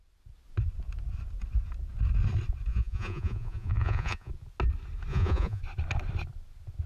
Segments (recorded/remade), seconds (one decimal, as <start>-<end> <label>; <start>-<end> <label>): 0.0-2.7 recorded; 2.7-4.3 remade; 4.3-5.1 recorded; 5.1-5.6 remade; 5.6-6.9 recorded